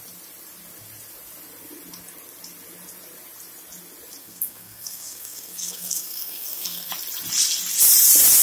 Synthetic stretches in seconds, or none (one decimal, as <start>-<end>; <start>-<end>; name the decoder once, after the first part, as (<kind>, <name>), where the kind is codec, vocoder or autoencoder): 4.2-6.9 (codec, SNAC)